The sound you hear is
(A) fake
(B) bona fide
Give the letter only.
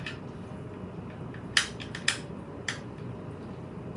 B